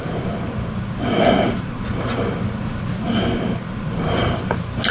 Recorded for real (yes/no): yes